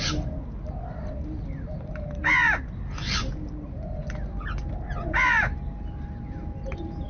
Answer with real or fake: real